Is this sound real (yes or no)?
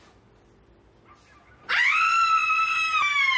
yes